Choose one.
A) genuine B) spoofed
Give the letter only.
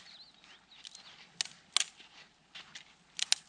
A